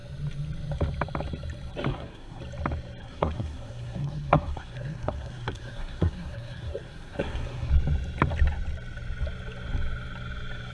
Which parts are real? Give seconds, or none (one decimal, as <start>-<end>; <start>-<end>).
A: 0.0-1.9; 2.4-3.0; 7.7-10.7